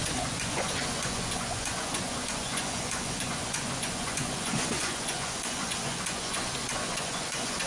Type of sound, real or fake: fake